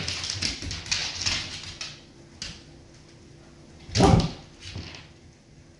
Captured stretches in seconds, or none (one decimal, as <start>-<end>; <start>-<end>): 0.0-5.8